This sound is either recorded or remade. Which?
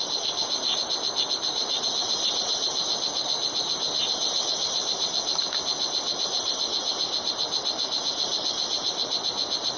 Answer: recorded